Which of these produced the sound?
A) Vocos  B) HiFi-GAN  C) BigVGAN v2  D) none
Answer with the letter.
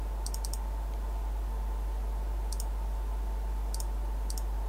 C